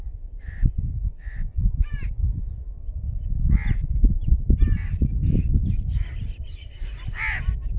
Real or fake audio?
real